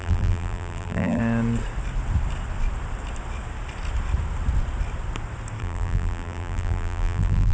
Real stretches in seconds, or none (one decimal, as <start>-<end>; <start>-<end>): 1.2-5.6